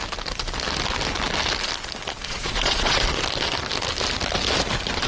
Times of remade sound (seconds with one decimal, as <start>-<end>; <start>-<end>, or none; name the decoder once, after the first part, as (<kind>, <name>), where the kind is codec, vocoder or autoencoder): 2.3-3.0 (vocoder, Vocos)